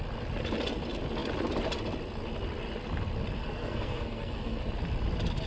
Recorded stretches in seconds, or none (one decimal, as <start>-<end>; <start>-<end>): 0.0-3.4; 4.6-5.5